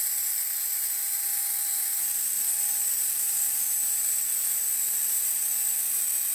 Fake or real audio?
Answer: real